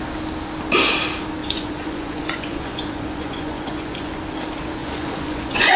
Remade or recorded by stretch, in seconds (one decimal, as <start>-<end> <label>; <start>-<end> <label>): 0.0-1.4 recorded; 1.4-4.1 remade; 4.1-4.8 recorded; 4.8-5.8 remade